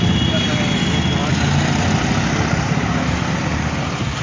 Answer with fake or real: real